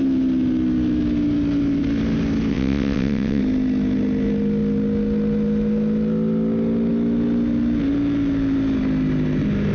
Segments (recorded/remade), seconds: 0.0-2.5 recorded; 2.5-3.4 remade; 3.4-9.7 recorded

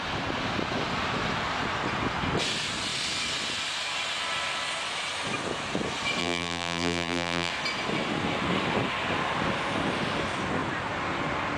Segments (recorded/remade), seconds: 0.0-6.2 recorded; 6.2-7.5 remade; 7.5-11.6 recorded

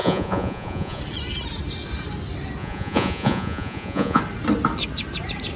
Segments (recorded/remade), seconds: 0.0-1.0 remade; 1.0-2.6 recorded; 2.6-4.2 remade; 4.2-5.6 recorded

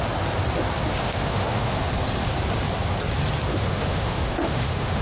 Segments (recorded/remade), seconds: 0.0-1.0 recorded; 1.0-1.8 remade; 1.8-3.5 recorded; 3.5-5.0 remade

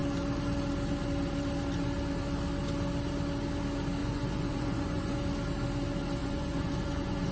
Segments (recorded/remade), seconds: 0.0-4.0 recorded; 4.0-5.2 remade; 5.2-6.2 recorded; 6.2-7.3 remade

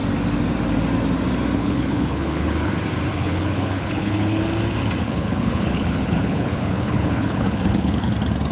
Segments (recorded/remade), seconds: 0.0-1.6 recorded; 1.6-2.7 remade; 2.7-3.1 recorded; 3.1-4.4 remade; 4.4-5.0 recorded; 5.0-8.1 remade; 8.1-8.5 recorded